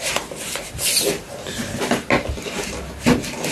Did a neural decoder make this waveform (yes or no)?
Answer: no